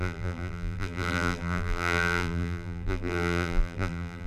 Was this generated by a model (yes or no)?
yes